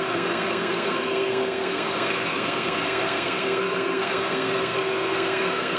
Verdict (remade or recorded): remade